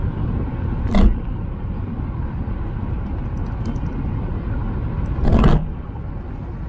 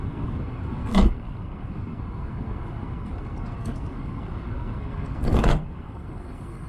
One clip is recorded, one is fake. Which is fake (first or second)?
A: second